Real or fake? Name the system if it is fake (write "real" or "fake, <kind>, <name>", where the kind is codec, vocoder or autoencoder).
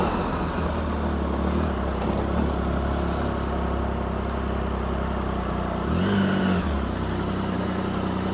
real